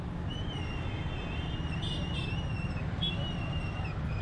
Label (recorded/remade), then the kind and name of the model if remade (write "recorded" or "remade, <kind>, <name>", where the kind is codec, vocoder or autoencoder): recorded